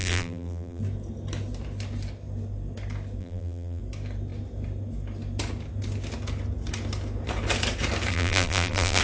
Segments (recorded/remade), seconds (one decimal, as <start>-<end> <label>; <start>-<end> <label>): 0.0-0.8 remade; 0.8-3.2 recorded; 3.2-3.8 remade; 3.8-8.1 recorded; 8.1-9.0 remade